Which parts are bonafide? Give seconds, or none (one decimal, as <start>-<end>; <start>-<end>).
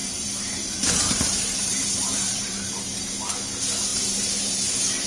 3.1-3.9